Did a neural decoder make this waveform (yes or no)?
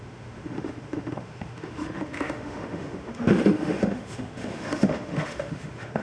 yes